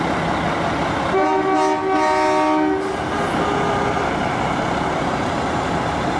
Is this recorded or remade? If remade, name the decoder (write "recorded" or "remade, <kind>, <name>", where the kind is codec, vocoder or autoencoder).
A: recorded